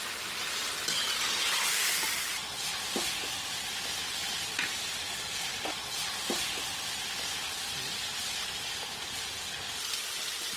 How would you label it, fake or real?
real